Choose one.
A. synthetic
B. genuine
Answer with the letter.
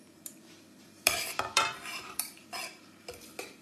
A